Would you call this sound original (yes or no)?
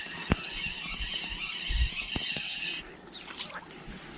yes